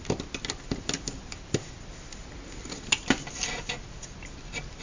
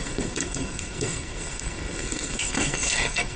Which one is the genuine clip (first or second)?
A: first